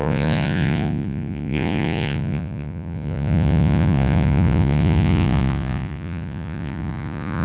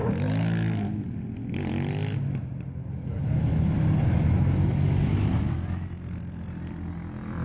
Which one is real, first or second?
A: second